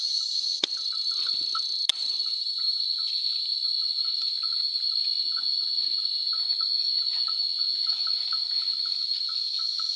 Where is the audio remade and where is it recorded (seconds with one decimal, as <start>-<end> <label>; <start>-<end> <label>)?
0.0-1.9 recorded; 1.9-2.8 remade; 2.8-10.0 recorded